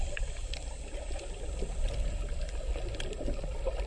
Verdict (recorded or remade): recorded